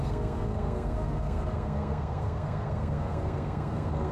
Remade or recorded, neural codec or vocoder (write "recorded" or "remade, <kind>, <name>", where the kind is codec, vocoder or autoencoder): remade, codec, SNAC